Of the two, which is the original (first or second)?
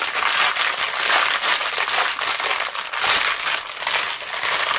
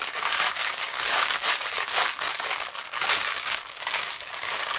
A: first